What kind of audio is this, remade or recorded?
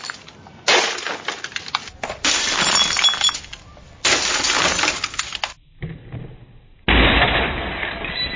recorded